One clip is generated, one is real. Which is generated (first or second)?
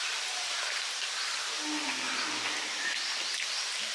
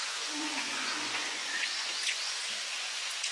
second